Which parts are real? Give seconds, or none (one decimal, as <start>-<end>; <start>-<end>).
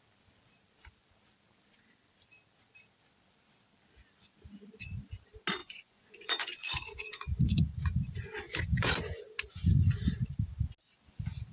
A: 0.0-5.6; 8.9-11.5